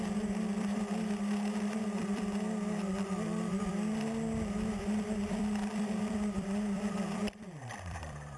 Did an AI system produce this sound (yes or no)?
yes